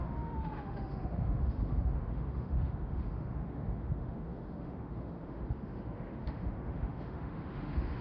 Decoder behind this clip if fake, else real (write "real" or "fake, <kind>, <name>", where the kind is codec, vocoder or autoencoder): fake, autoencoder, DAC-VAE